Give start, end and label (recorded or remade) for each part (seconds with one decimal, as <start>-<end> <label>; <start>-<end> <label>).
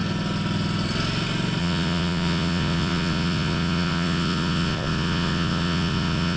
0.0-1.6 recorded; 1.6-6.4 remade